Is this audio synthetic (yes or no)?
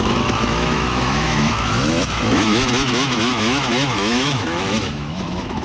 yes